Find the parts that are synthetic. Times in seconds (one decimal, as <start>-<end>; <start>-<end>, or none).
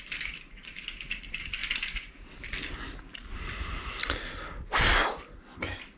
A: none